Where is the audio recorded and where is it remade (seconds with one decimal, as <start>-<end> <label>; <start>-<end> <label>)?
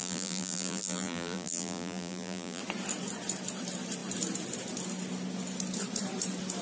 0.0-2.6 remade; 2.6-6.6 recorded